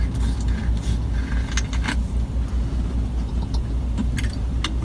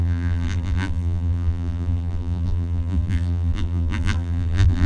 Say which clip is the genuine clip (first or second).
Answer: first